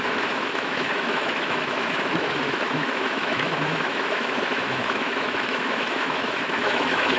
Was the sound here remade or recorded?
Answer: remade